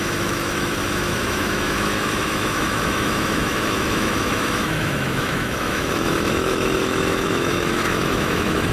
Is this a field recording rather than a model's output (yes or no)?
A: no